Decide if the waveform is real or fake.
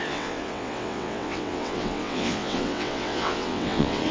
fake